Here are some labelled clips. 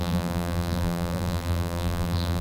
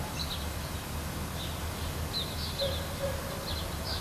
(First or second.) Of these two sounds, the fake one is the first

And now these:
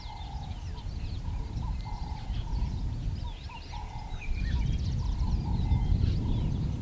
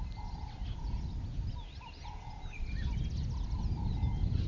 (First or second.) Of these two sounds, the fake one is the first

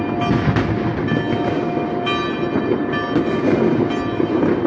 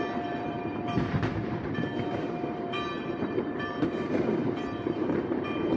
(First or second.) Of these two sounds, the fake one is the second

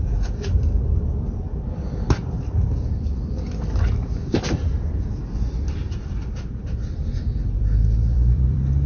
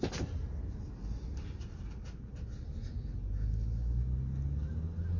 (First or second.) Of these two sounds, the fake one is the first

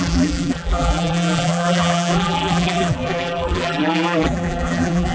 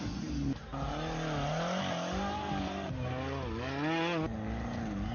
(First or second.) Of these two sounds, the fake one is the first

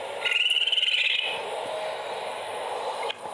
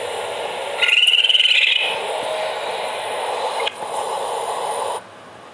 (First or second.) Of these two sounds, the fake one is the second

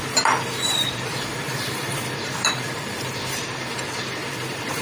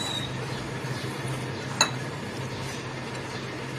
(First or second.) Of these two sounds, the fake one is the first